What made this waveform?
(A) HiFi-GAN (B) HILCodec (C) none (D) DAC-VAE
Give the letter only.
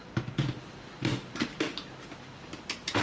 C